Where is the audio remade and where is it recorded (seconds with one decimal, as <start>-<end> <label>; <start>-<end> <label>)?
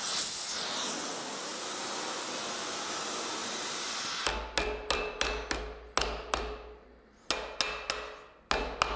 0.0-3.4 recorded; 3.4-4.0 remade; 4.0-9.0 recorded